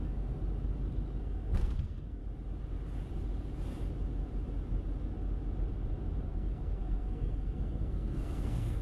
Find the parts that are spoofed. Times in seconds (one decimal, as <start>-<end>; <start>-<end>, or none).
0.0-0.4; 1.2-2.2; 6.2-8.8